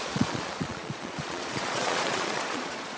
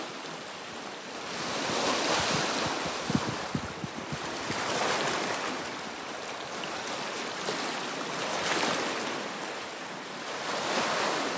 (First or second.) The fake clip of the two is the first